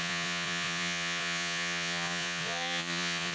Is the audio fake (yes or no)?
yes